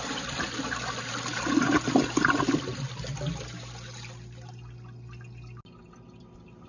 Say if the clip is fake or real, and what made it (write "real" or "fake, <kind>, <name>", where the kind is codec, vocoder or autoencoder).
real